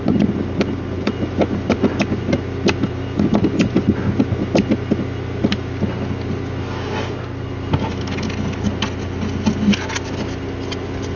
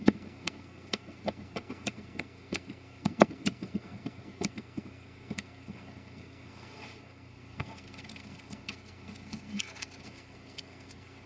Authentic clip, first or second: first